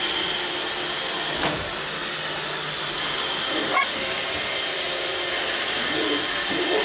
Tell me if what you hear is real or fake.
real